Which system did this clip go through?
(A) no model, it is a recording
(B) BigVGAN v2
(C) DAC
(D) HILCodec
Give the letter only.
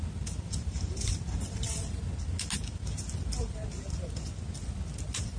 A